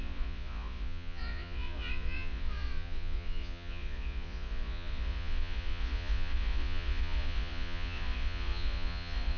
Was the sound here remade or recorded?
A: remade